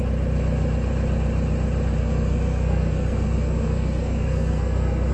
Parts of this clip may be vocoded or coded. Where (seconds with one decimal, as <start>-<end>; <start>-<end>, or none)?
2.0-5.1